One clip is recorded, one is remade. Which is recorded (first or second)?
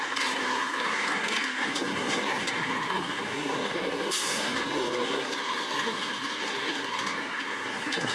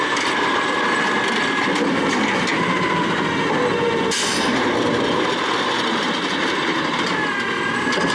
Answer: second